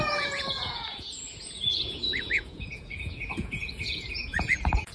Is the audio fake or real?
fake